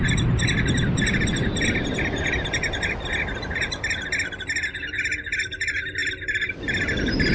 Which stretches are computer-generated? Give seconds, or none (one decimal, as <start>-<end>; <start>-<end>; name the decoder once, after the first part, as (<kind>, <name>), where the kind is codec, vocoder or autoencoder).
none